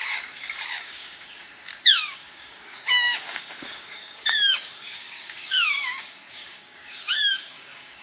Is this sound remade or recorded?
remade